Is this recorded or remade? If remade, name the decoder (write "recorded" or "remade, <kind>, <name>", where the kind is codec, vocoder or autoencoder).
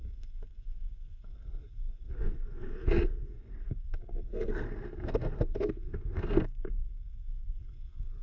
remade, codec, SNAC